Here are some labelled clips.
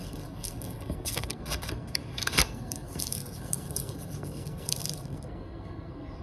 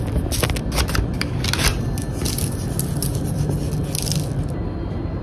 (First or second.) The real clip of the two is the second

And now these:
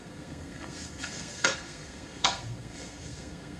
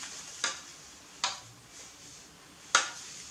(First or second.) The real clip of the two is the second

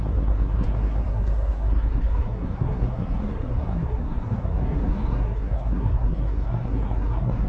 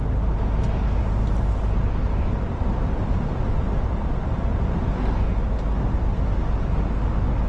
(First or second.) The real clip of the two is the second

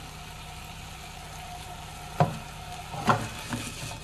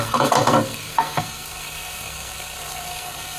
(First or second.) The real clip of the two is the first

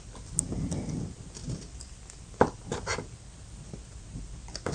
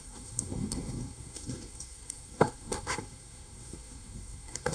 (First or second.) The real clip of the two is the first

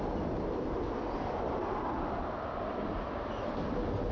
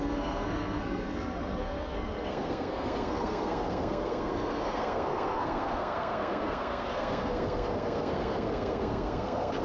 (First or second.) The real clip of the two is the first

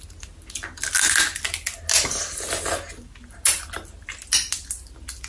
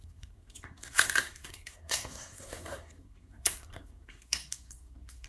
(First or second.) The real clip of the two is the first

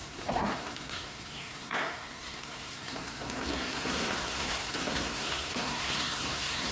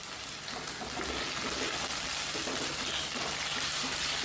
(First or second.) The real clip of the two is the second